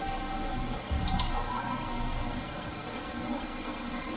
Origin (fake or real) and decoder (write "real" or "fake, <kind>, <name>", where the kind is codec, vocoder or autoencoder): fake, codec, SNAC